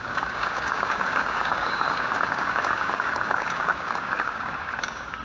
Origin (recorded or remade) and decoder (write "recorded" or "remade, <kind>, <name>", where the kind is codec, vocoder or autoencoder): remade, codec, DAC